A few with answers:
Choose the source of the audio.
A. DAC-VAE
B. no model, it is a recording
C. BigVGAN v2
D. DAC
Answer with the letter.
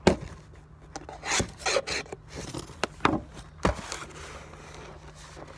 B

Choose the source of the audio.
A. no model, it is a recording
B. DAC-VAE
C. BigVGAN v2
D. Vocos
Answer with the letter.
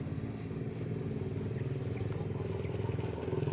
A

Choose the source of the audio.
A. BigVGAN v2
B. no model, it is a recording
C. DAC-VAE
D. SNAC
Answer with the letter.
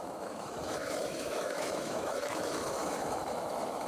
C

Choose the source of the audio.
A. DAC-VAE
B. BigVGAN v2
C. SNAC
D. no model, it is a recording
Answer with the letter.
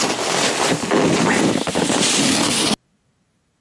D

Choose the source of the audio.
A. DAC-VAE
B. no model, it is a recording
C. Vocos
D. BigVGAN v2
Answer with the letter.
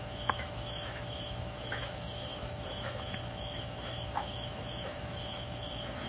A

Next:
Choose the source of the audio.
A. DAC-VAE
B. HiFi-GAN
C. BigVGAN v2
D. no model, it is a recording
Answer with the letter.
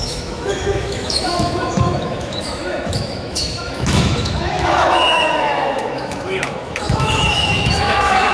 A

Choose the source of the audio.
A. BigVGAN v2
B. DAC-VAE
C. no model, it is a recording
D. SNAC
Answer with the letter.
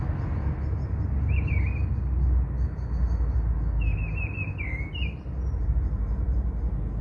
C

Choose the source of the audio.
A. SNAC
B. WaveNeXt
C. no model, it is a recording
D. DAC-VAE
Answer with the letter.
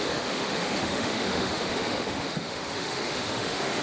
D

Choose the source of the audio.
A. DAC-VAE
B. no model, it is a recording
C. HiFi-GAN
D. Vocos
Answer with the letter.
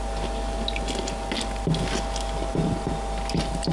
B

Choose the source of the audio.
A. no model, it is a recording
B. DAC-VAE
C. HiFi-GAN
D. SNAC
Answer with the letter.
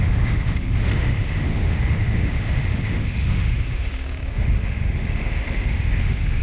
B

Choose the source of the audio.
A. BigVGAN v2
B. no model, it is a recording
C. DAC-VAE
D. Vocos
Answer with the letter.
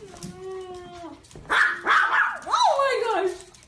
B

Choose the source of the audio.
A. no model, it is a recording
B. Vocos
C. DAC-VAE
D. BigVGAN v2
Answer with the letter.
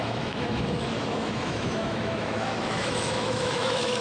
C